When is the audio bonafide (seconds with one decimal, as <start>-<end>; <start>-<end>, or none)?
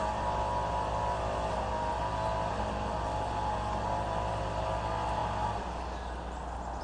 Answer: 0.0-6.8